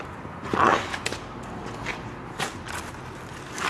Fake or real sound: real